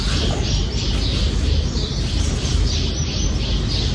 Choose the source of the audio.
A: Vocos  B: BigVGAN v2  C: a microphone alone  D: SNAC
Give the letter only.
C